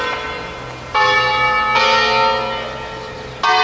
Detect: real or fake real